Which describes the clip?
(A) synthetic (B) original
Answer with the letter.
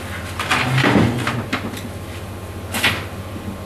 B